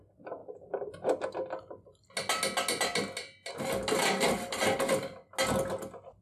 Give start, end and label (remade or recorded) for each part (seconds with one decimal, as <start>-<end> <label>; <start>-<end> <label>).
0.0-6.2 recorded